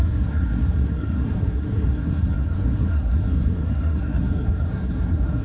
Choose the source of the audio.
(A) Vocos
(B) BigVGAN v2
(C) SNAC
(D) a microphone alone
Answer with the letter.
C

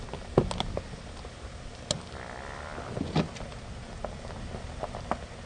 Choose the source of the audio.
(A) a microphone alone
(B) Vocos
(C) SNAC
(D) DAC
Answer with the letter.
A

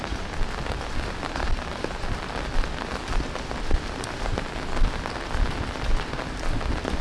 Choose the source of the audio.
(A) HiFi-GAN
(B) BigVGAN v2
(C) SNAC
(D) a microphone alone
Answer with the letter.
D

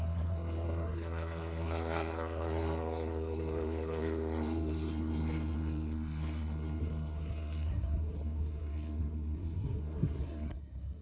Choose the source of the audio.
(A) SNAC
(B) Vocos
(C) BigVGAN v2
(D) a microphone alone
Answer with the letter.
A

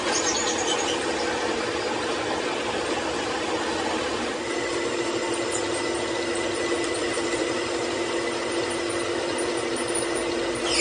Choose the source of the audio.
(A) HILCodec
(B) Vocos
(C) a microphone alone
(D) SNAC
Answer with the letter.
C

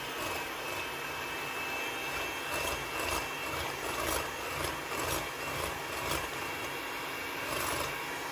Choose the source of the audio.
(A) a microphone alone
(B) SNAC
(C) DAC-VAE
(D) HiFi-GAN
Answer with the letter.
A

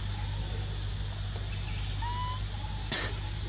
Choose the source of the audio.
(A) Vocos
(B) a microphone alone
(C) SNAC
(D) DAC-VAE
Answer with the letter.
B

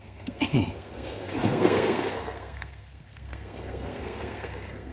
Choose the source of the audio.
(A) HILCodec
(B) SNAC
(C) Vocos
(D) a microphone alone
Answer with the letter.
B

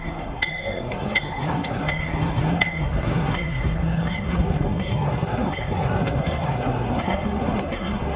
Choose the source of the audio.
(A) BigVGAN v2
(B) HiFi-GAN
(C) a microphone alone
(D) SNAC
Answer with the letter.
D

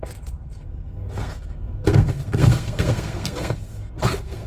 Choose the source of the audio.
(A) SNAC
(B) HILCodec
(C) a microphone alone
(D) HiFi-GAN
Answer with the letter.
A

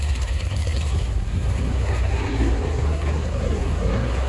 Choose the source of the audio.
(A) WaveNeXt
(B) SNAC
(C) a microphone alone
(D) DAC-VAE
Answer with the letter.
B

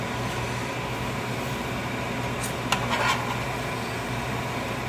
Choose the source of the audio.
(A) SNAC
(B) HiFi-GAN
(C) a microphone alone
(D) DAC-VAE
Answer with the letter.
C